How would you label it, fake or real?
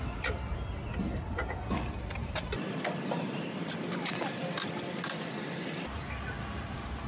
real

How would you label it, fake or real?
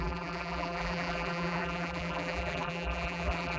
fake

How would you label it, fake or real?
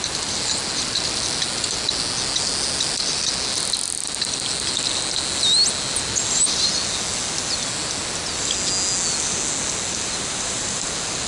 real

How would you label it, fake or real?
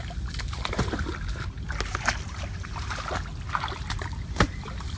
real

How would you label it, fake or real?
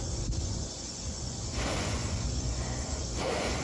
fake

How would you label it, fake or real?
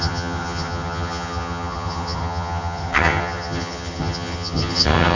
fake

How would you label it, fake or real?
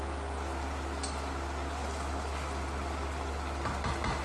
real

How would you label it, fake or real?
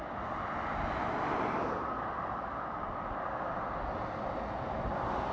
real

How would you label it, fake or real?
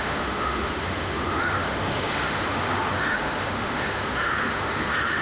fake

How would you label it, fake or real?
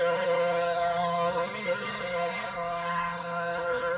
fake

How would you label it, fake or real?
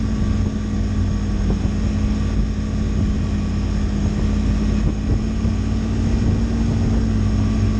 real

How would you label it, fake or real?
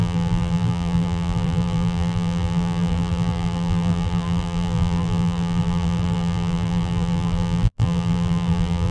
fake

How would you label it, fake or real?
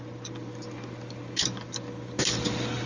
real